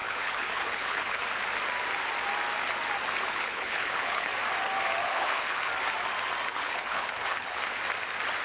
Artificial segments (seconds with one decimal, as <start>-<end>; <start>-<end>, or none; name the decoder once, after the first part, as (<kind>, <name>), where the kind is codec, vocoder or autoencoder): 0.0-1.2 (codec, HILCodec); 3.3-4.3; 5.0-5.7; 6.5-7.6